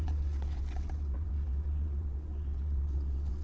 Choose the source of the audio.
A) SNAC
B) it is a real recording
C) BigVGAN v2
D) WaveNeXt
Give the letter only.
D